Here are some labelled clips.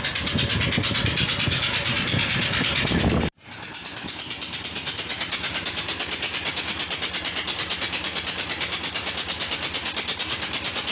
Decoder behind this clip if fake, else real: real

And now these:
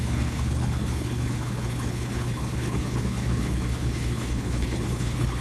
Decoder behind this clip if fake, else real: fake, codec, HILCodec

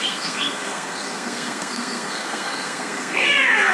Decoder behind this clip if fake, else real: fake, codec, SNAC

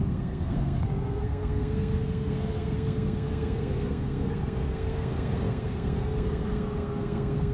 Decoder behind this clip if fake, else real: fake, codec, SNAC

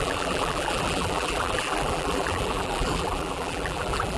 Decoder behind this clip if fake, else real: fake, vocoder, BigVGAN v2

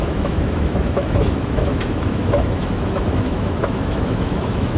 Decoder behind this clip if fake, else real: fake, autoencoder, DAC-VAE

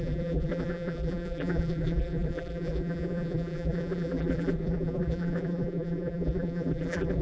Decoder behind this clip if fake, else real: fake, vocoder, BigVGAN v2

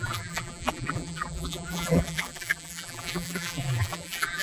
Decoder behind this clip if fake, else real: fake, vocoder, BigVGAN v2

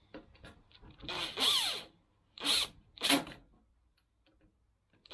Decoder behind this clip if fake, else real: real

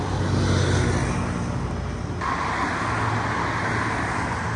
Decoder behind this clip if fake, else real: real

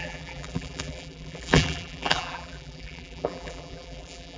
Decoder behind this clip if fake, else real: fake, vocoder, BigVGAN v2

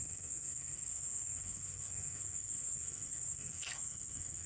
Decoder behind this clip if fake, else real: fake, codec, SNAC